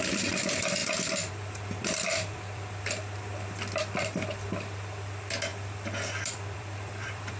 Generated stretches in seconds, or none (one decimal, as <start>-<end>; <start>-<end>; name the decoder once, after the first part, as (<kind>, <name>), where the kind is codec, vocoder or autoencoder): 0.0-0.8 (vocoder, BigVGAN v2); 1.3-3.3; 3.8-7.4